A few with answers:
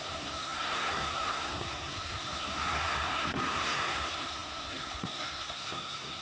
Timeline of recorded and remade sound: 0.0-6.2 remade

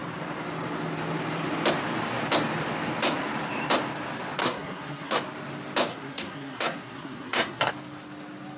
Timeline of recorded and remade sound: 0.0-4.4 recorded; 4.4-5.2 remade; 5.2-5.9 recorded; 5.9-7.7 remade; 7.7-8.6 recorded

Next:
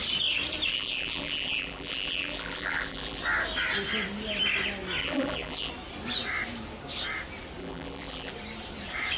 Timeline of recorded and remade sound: 0.0-0.7 recorded; 0.7-3.2 remade; 3.2-5.0 recorded; 5.0-5.7 remade; 5.7-7.6 recorded; 7.6-8.3 remade; 8.3-9.2 recorded